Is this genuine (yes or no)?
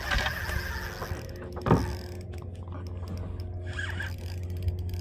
yes